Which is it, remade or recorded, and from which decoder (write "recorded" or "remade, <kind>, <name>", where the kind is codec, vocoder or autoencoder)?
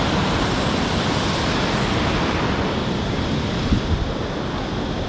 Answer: recorded